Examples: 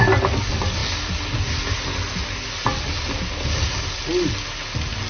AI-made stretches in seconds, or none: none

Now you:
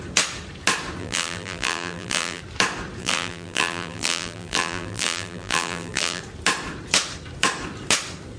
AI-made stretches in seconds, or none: 1.0-2.4 (vocoder, BigVGAN v2); 3.0-6.2

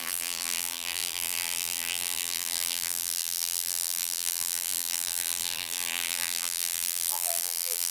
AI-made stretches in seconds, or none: 0.0-7.9 (vocoder, BigVGAN v2)